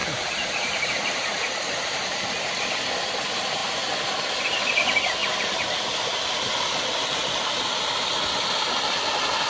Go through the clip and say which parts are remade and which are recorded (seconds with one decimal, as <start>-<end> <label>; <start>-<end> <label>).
0.0-2.2 remade; 2.2-9.5 recorded